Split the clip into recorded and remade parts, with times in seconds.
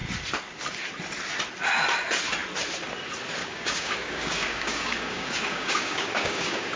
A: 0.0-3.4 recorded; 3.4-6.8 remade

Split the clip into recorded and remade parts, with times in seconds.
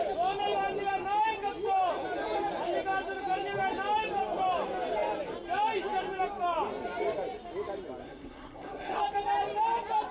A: 0.0-8.0 recorded; 8.0-9.0 remade; 9.0-10.1 recorded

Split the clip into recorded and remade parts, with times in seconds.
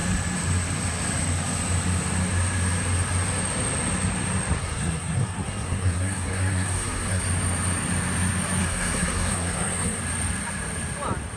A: 0.0-4.6 recorded; 4.6-7.2 remade; 7.2-8.6 recorded; 8.6-10.0 remade; 10.0-11.4 recorded